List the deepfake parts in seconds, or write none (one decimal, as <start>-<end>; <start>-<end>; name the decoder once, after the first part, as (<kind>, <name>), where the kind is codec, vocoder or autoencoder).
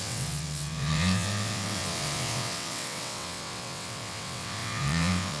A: 0.0-5.4 (vocoder, WaveNeXt)